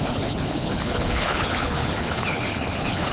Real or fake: fake